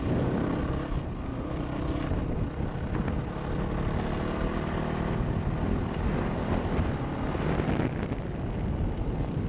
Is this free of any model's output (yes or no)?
yes